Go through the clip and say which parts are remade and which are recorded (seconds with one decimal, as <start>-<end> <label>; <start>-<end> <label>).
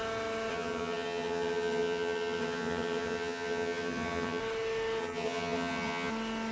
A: 0.0-0.5 recorded; 0.5-4.4 remade; 4.4-5.0 recorded; 5.0-6.1 remade; 6.1-6.5 recorded